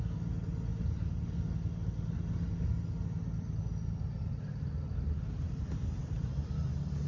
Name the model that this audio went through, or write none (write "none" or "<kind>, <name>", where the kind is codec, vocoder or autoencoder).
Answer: none